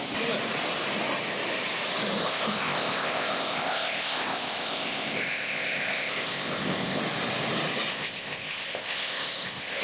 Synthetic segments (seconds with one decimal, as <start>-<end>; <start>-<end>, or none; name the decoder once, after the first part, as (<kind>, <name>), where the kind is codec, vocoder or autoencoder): 2.2-7.0 (codec, ZipCodec); 7.9-9.8

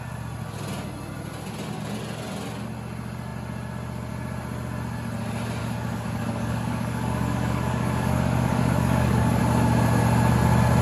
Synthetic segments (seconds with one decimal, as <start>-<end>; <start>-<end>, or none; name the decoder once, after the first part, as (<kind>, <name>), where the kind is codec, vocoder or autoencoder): 5.6-9.4 (codec, DAC)

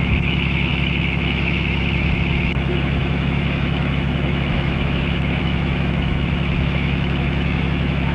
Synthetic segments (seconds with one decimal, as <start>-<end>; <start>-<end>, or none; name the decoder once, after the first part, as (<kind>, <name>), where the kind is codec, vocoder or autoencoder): 0.0-8.1 (autoencoder, DAC-VAE)

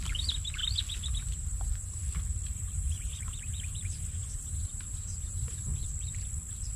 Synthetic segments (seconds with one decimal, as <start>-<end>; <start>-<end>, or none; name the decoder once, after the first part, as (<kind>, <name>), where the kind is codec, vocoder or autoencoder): 0.0-0.6 (vocoder, BigVGAN v2); 1.1-2.0; 2.5-5.7

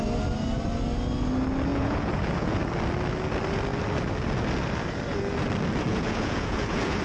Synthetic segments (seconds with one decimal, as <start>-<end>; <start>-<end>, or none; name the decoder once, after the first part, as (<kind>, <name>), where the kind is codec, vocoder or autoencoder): 1.7-2.6 (vocoder, Vocos); 5.9-7.0

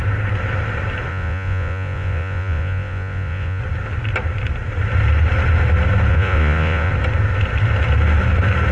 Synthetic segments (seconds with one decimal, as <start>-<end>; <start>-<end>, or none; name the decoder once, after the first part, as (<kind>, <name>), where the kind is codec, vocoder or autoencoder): 1.1-3.6 (vocoder, Vocos); 6.1-6.9

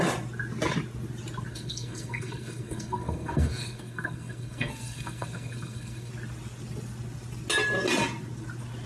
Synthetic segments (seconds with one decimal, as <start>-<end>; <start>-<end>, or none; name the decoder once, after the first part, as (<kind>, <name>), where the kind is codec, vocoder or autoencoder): 1.5-6.1 (codec, SNAC)